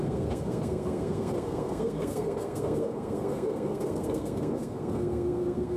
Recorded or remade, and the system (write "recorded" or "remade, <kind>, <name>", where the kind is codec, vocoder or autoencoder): remade, codec, SNAC